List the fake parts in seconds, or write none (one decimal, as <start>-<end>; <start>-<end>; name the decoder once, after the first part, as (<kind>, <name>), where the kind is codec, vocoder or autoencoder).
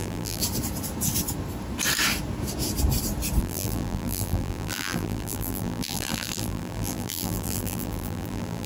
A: 0.0-0.4 (vocoder, BigVGAN v2); 3.4-8.7